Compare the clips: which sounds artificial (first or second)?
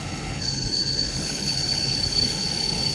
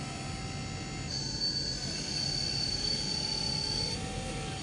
first